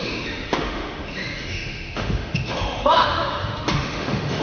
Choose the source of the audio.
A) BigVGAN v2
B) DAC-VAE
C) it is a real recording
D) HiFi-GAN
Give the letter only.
B